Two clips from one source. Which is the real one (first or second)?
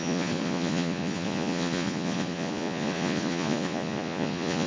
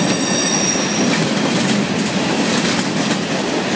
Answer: second